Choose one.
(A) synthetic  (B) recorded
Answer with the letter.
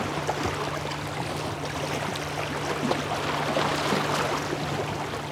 B